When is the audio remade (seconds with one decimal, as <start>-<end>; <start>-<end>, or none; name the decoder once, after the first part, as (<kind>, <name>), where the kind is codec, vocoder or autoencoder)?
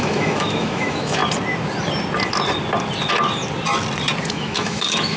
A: 0.0-1.2 (autoencoder, DAC-VAE); 4.3-5.2